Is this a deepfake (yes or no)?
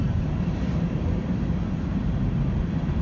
yes